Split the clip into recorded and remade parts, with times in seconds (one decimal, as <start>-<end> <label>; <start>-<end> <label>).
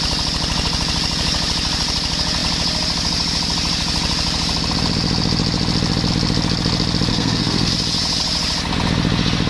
0.0-7.1 recorded; 7.1-7.7 remade; 7.7-9.5 recorded